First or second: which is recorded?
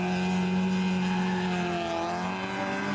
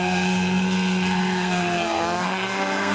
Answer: first